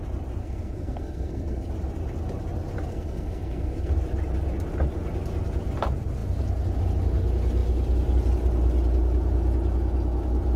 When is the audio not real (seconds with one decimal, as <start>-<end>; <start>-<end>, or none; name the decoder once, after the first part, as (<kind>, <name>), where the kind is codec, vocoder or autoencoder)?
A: 0.4-1.7 (codec, SNAC); 2.9-3.9